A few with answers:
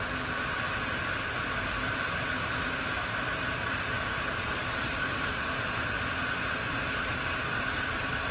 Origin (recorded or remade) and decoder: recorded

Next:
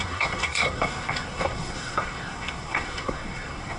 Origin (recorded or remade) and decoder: remade, codec, SNAC